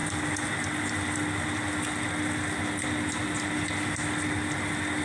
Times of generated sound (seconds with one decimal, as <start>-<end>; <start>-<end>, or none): none